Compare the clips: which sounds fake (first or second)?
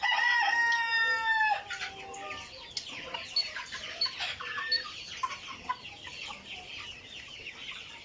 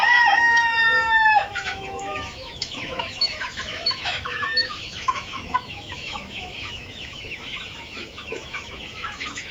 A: second